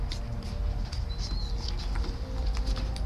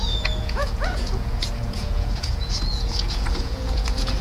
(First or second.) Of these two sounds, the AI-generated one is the second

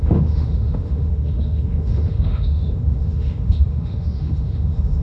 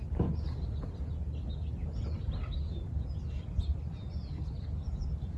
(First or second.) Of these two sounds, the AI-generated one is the first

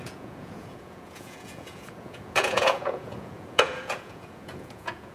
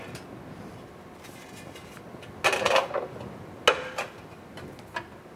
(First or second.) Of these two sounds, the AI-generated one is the first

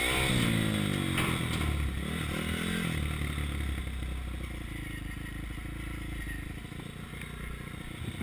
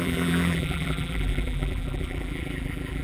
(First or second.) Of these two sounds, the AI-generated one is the second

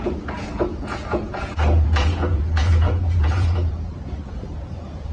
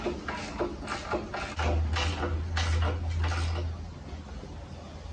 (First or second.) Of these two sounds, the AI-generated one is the first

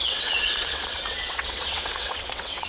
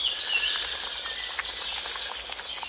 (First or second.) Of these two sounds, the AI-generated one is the first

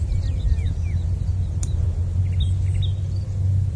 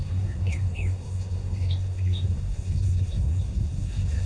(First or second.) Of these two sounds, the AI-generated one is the second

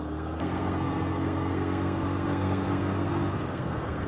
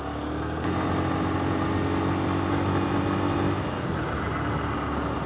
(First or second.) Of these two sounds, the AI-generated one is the first